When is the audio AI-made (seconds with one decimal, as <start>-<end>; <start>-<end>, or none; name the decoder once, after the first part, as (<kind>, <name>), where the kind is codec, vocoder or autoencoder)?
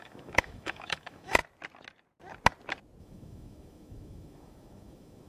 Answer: 0.0-1.4 (autoencoder, DAC-VAE); 3.0-5.3